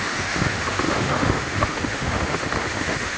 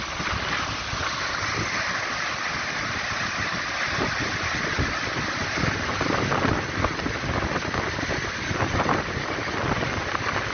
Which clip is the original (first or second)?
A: second